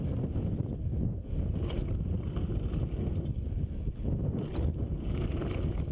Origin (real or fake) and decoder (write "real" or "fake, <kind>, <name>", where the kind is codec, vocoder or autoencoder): real